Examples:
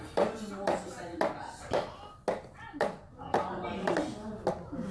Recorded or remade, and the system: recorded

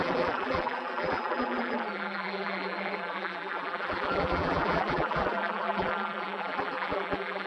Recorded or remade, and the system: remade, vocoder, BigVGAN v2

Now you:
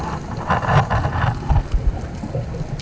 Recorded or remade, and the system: recorded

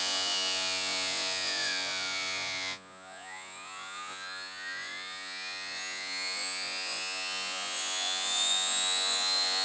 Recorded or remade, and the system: remade, vocoder, Vocos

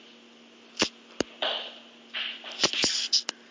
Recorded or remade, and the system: recorded